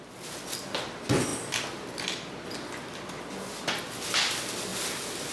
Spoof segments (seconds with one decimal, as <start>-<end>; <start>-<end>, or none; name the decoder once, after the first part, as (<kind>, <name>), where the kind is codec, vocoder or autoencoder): none